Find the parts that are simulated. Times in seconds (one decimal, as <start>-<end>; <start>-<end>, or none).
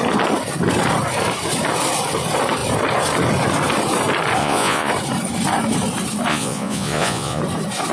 4.4-4.9; 6.3-7.4